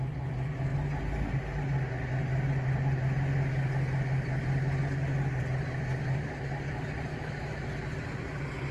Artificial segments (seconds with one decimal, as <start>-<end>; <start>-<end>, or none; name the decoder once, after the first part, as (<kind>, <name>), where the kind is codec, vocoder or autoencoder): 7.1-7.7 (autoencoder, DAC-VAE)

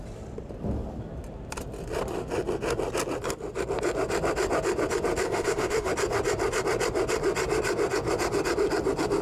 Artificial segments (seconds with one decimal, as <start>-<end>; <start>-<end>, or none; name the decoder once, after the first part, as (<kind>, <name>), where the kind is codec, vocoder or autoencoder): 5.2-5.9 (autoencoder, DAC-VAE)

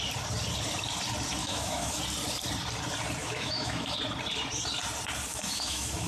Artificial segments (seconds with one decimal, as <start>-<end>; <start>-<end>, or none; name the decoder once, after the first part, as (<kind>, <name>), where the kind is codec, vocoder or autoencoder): 1.4-2.0 (autoencoder, DAC-VAE); 3.2-4.0; 5.3-6.1